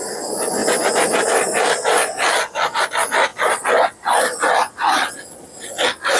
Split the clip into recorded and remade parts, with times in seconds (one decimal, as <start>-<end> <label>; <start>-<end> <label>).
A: 0.0-6.2 recorded